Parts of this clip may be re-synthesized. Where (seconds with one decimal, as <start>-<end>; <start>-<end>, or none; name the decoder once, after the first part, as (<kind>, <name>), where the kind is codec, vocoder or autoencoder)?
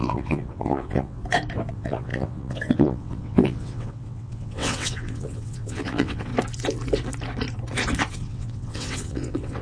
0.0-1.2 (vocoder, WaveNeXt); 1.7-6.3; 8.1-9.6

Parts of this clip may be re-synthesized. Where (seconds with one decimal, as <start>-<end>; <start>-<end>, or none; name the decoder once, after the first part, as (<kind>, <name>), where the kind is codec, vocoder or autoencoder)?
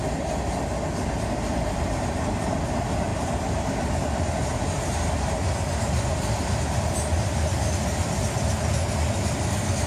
3.1-4.3 (vocoder, BigVGAN v2)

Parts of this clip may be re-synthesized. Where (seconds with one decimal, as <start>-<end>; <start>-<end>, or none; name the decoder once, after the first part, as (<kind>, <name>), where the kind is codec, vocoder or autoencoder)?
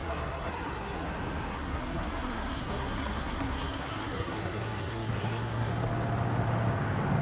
0.0-1.1 (codec, SNAC); 1.5-5.7